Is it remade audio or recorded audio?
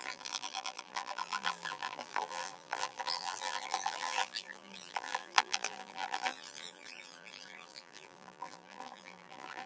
remade